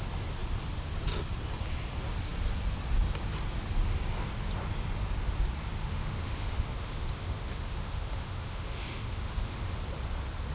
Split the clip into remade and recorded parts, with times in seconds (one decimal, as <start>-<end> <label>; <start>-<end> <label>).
0.0-5.8 recorded; 5.8-9.8 remade; 9.8-10.5 recorded